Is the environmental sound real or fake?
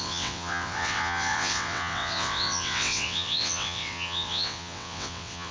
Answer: fake